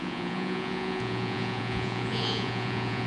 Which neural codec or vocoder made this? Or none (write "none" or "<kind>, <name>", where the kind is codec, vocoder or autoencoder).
vocoder, Vocos